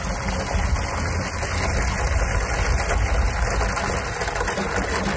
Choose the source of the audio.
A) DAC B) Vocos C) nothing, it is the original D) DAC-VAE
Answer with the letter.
C